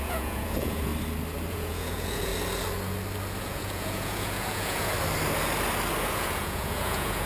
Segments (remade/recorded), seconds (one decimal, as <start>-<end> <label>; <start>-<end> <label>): 0.0-0.9 remade; 0.9-1.5 recorded; 1.5-2.3 remade; 2.3-3.4 recorded; 3.4-4.9 remade; 4.9-6.1 recorded; 6.1-7.3 remade